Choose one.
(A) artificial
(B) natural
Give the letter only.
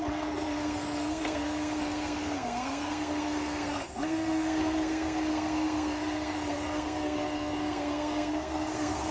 A